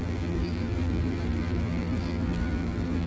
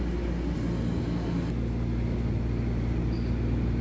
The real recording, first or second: second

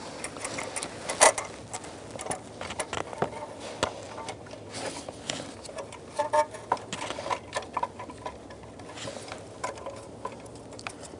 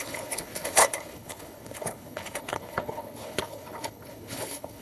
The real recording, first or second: first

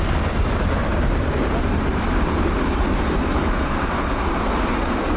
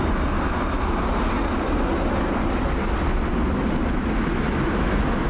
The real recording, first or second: second